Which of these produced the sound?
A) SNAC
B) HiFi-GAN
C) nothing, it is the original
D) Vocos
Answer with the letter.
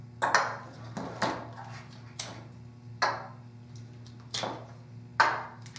C